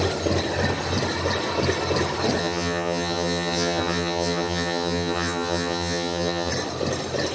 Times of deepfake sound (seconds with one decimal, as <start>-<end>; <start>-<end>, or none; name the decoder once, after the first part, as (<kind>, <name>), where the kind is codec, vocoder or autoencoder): 2.4-6.5 (vocoder, HiFi-GAN)